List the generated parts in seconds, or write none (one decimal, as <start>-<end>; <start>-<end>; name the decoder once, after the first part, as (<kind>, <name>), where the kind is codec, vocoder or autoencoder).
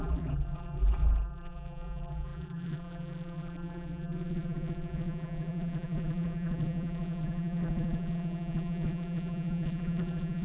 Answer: 0.0-10.4 (vocoder, BigVGAN v2)